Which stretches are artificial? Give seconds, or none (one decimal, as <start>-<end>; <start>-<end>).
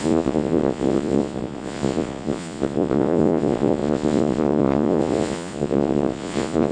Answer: 0.0-6.7